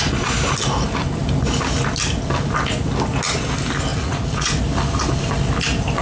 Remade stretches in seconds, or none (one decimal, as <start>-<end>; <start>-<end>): 3.9-4.6